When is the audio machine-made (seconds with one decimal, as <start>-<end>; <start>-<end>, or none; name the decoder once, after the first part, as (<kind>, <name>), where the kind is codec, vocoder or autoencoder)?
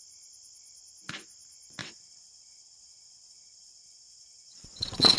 1.8-5.2 (vocoder, WaveNeXt)